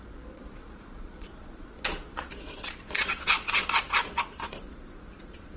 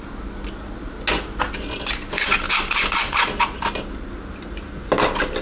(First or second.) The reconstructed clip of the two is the first